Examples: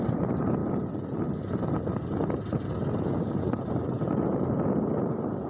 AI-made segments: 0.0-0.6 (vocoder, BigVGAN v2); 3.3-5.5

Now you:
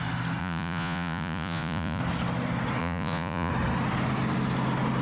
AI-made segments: 0.4-2.0 (vocoder, Vocos); 2.8-3.5

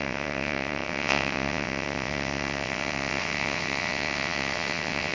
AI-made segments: 0.0-5.1 (vocoder, WaveNeXt)

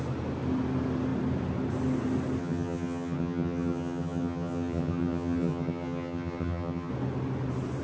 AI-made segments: 2.4-6.9 (vocoder, HiFi-GAN)

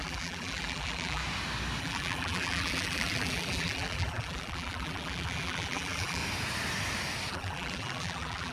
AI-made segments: 0.0-1.2 (vocoder, BigVGAN v2); 1.8-6.2; 7.3-8.5

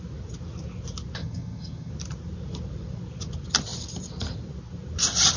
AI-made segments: 1.2-1.9 (vocoder, HiFi-GAN)

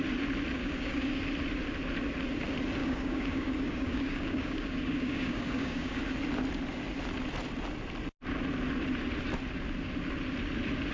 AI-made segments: 0.6-1.2 (codec, DAC); 2.8-6.0

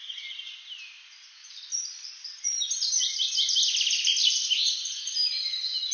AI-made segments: 1.4-4.7 (vocoder, BigVGAN v2)